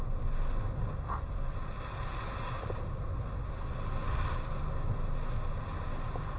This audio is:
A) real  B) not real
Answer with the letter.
A